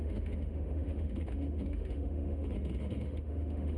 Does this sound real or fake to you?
fake